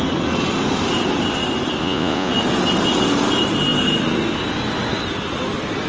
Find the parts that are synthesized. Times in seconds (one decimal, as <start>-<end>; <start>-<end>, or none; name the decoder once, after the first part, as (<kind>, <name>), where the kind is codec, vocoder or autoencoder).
1.8-2.3 (vocoder, Vocos)